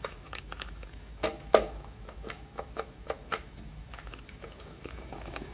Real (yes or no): no